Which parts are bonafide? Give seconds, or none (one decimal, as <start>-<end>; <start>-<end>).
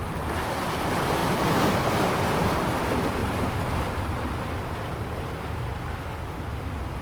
0.0-7.0